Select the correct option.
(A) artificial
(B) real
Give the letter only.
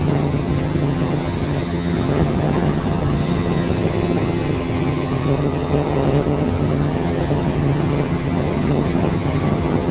A